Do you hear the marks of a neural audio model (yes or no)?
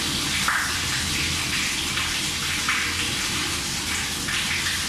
no